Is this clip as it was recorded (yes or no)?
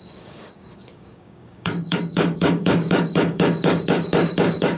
no